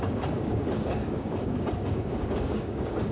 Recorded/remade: remade